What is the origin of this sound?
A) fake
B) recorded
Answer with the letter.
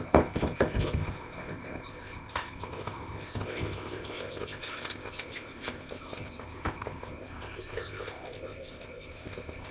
A